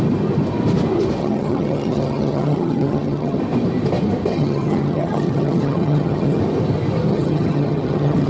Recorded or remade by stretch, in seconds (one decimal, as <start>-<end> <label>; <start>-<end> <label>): 0.0-1.2 recorded; 1.2-3.4 remade; 3.4-4.3 recorded; 4.3-6.4 remade; 6.4-7.1 recorded; 7.1-8.3 remade